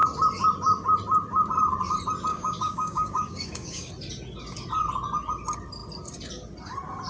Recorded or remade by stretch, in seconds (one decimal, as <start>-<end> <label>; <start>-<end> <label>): 0.0-2.3 recorded; 2.3-3.9 remade; 3.9-7.1 recorded

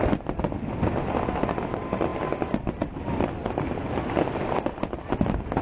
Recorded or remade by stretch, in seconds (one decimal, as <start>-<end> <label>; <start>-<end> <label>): 0.0-5.6 recorded

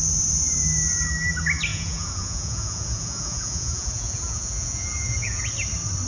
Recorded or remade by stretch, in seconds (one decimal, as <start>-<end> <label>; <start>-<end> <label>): 0.0-1.7 recorded; 1.7-5.4 remade; 5.4-6.1 recorded